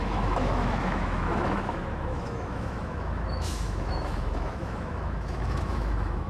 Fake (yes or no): yes